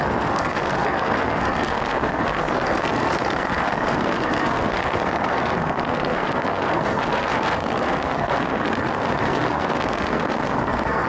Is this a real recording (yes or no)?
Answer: no